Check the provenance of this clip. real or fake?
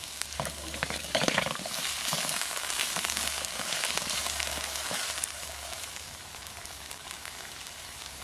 fake